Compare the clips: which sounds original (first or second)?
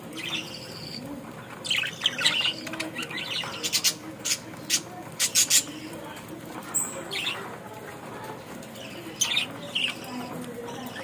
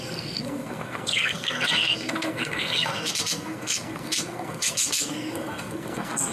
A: first